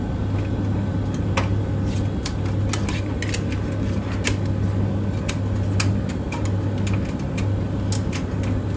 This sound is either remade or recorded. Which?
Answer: recorded